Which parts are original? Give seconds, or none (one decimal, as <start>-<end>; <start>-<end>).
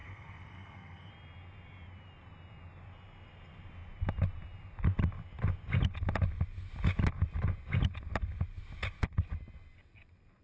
1.1-10.4